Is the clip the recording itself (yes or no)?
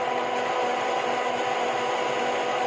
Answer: yes